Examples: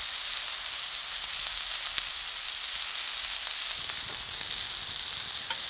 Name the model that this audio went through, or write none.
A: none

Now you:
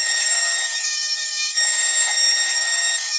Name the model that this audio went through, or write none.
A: codec, DAC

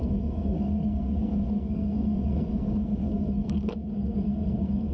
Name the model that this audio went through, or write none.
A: codec, SNAC